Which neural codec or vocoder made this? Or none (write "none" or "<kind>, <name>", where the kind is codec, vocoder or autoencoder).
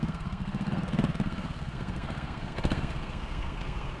codec, SNAC